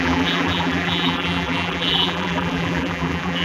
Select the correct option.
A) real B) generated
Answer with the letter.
B